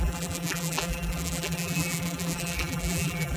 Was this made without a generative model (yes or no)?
no